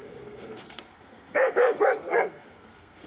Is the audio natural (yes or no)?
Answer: no